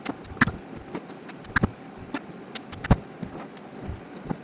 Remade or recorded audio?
recorded